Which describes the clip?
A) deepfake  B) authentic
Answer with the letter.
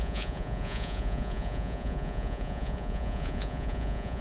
A